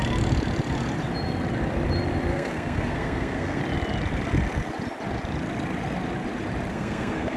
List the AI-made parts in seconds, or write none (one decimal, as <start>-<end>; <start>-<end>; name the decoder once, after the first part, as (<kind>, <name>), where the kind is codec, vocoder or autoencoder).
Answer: 2.3-3.6 (codec, SNAC); 6.7-7.4